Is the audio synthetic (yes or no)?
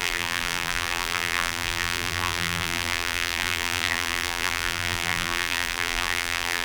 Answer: yes